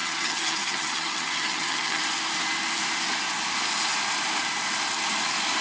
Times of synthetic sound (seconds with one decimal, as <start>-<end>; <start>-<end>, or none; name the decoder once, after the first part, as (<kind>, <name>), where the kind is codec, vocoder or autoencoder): 0.0-2.0 (vocoder, HiFi-GAN)